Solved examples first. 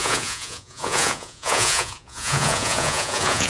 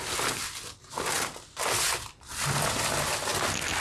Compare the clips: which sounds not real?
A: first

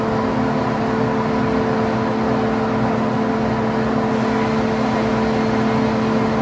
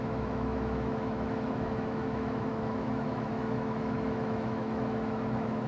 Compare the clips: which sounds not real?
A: second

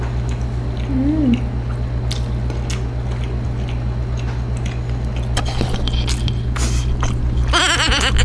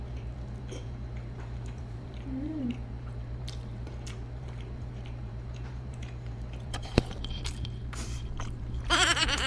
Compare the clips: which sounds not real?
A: second